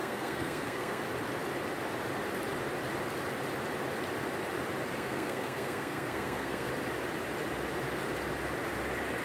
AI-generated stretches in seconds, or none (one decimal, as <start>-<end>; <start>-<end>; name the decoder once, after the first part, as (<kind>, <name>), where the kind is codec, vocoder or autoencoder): 0.0-1.0 (codec, SNAC); 4.9-6.7